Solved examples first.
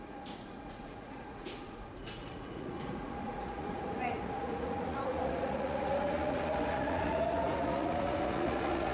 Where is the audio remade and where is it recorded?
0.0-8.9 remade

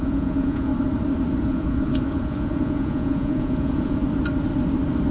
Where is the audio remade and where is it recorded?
0.0-0.7 remade; 0.7-1.4 recorded; 1.4-4.0 remade; 4.0-5.1 recorded

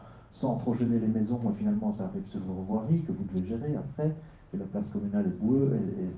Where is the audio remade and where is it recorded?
0.0-2.8 remade; 2.8-5.6 recorded; 5.6-6.2 remade

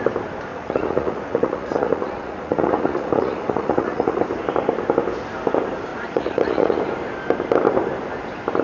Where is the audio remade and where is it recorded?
0.0-0.5 recorded; 0.5-4.2 remade; 4.2-5.9 recorded; 5.9-6.8 remade; 6.8-8.6 recorded